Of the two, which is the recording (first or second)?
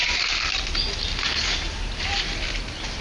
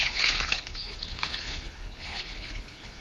first